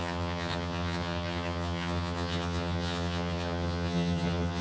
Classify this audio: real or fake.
fake